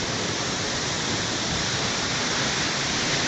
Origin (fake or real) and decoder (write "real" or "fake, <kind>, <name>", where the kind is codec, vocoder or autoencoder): real